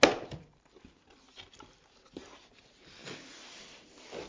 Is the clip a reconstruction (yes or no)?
no